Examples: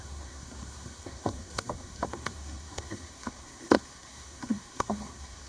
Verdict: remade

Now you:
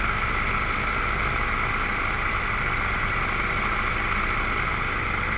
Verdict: recorded